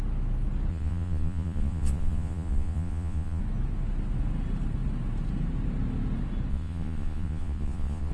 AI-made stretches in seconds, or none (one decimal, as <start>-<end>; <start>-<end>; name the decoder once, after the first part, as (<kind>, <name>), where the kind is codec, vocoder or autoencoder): 0.7-3.4 (vocoder, Vocos); 6.5-8.1